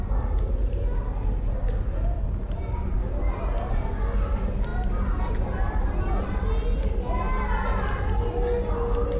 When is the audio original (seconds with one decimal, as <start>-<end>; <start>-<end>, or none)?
0.0-9.2